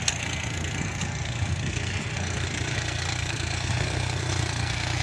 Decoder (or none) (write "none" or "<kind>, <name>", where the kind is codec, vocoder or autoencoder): codec, SNAC